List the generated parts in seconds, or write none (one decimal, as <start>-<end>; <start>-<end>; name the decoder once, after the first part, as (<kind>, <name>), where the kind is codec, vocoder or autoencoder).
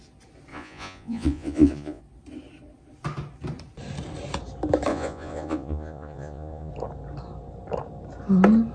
0.5-2.0 (vocoder, Vocos); 4.9-6.7